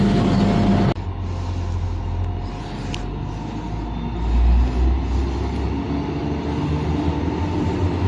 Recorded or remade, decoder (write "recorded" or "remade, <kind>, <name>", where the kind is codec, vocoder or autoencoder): recorded